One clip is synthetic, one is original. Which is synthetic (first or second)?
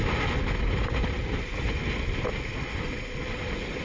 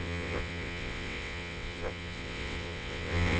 second